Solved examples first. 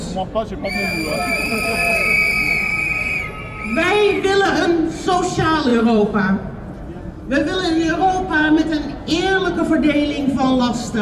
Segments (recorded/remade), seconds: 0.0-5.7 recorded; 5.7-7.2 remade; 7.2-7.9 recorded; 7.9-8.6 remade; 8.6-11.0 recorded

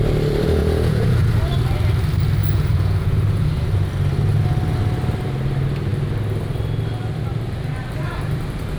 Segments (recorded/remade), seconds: 0.0-0.6 recorded; 0.6-1.4 remade; 1.4-2.4 recorded; 2.4-3.6 remade; 3.6-8.8 recorded

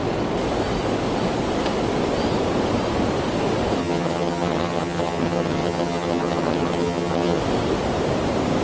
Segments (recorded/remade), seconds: 0.0-3.8 recorded; 3.8-7.4 remade; 7.4-8.6 recorded

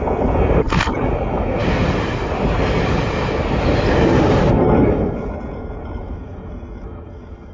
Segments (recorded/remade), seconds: 0.0-1.6 remade; 1.6-4.5 recorded; 4.5-7.5 remade

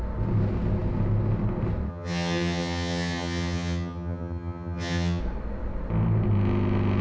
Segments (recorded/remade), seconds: 0.0-1.9 recorded; 1.9-5.2 remade; 5.2-7.0 recorded